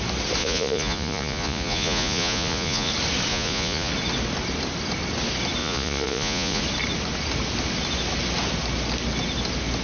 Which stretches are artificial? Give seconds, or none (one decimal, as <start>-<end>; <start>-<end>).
0.4-2.9; 3.3-3.9; 5.6-6.6